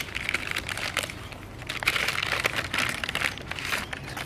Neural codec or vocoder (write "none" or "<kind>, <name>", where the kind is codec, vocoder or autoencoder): none